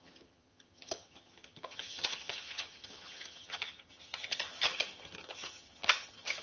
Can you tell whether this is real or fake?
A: fake